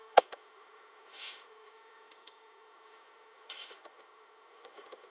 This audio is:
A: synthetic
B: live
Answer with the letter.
A